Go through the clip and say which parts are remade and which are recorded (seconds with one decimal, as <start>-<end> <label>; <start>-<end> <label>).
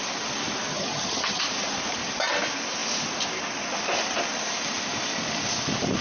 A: 0.0-0.7 recorded; 0.7-1.4 remade; 1.4-6.0 recorded